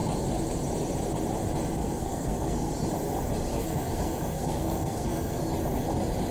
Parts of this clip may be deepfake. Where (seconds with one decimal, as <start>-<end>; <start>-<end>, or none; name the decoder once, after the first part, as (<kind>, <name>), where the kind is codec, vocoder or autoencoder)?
1.8-2.7 (codec, SNAC); 3.5-5.4